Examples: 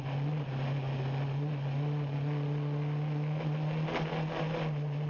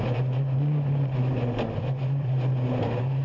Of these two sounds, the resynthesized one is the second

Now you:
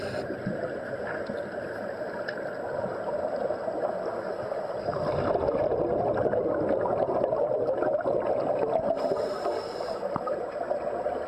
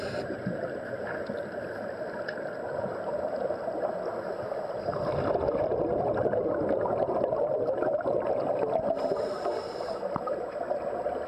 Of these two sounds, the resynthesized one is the second